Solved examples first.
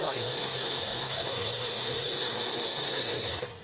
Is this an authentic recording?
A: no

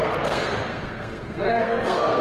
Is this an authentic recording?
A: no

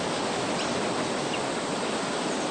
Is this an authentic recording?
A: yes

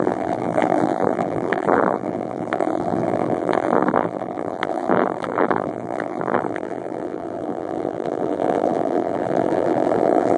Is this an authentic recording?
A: no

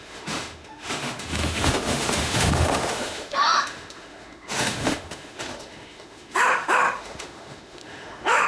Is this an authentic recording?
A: no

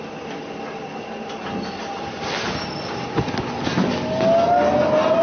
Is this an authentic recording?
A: yes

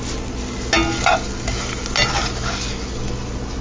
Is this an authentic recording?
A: yes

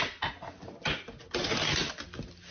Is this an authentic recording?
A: yes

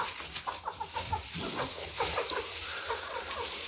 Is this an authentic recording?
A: yes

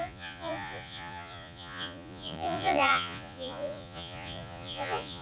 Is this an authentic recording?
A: no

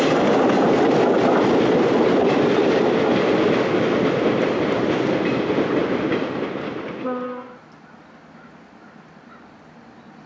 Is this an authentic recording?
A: yes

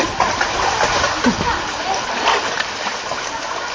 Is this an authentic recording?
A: yes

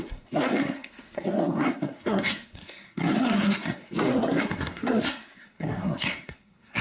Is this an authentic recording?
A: no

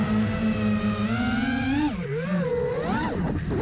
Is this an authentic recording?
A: yes